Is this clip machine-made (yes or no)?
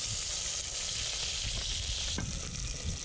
no